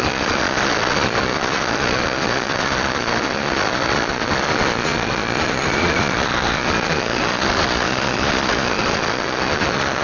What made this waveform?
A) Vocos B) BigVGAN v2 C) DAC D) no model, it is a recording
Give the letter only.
A